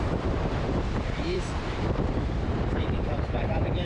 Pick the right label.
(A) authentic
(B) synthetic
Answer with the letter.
B